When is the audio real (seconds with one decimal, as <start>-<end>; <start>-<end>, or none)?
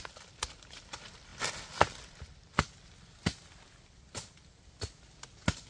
0.0-1.3; 4.7-5.7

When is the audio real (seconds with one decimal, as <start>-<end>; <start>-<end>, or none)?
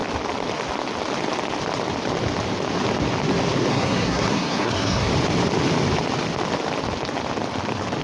0.0-3.7; 5.1-8.0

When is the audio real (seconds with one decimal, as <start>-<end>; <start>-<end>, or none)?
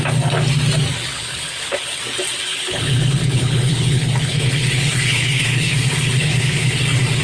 0.0-1.1; 2.0-2.5; 6.8-7.2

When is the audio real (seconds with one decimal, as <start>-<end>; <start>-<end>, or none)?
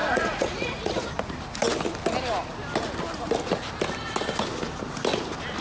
1.1-5.6